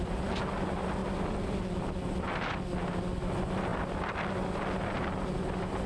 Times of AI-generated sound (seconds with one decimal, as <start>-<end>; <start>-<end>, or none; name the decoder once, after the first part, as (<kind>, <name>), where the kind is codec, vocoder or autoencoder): none